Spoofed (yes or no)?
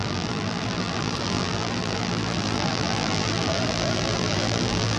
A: yes